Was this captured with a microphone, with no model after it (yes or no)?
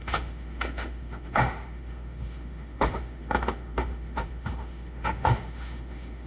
no